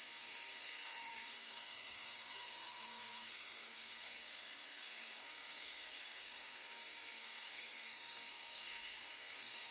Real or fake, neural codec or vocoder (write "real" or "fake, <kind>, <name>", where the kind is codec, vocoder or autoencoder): fake, codec, SNAC